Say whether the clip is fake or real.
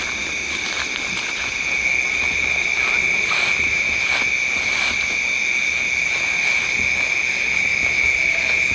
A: real